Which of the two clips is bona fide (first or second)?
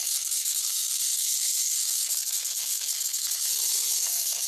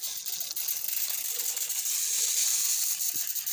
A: second